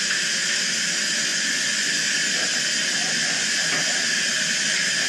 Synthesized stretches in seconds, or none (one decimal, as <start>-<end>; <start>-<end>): 1.3-2.0; 3.0-3.6